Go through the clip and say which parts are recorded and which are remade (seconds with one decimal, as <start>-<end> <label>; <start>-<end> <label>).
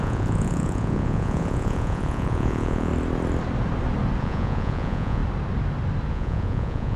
0.0-2.9 remade; 2.9-4.2 recorded; 4.2-5.2 remade; 5.2-6.1 recorded; 6.1-7.0 remade